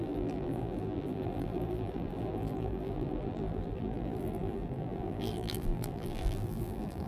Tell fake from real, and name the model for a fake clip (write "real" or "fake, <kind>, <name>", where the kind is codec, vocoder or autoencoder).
fake, vocoder, BigVGAN v2